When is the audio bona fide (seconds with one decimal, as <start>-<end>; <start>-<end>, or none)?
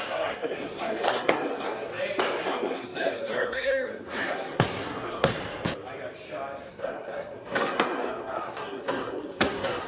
1.9-2.4; 5.3-6.7